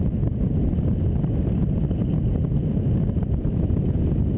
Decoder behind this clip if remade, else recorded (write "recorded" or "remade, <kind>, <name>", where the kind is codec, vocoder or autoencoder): recorded